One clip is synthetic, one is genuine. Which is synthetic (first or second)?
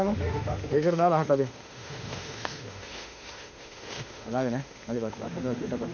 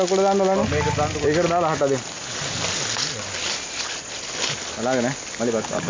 first